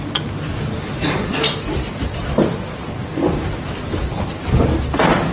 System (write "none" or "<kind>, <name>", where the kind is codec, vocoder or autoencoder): none